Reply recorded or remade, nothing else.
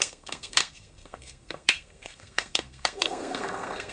remade